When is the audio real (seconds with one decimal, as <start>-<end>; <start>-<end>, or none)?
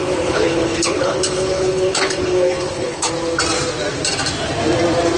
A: 3.1-5.2